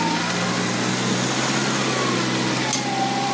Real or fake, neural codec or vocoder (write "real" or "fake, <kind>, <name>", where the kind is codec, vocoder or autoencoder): real